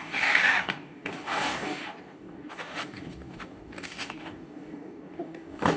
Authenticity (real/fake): fake